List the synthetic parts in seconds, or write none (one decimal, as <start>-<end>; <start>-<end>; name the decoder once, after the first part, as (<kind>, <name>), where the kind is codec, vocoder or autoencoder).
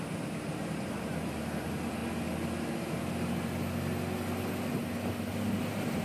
0.0-2.0 (vocoder, BigVGAN v2); 5.6-6.0